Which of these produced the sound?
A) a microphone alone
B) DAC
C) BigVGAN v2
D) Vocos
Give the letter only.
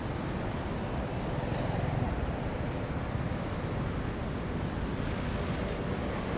A